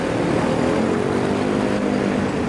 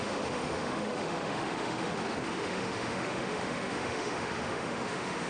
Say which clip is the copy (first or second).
second